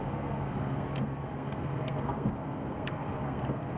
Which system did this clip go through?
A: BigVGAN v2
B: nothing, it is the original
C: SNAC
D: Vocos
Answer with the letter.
C